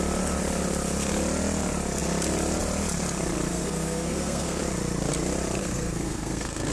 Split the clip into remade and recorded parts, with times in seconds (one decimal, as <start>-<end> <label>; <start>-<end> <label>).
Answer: 0.0-3.5 recorded; 3.5-4.6 remade; 4.6-5.6 recorded; 5.6-6.7 remade

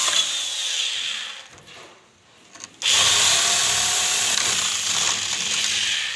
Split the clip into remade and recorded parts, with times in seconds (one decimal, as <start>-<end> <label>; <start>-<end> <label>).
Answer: 0.0-6.2 recorded